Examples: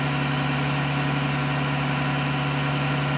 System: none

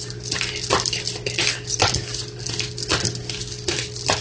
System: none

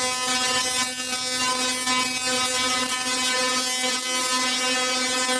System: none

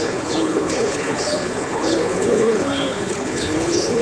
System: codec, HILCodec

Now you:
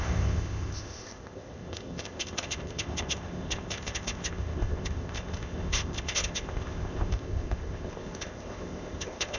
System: codec, ZipCodec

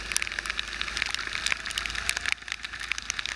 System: none